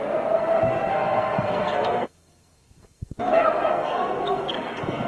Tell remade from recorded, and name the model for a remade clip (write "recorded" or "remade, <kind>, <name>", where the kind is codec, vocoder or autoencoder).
remade, codec, SNAC